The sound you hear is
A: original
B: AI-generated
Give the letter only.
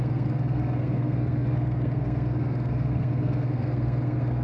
B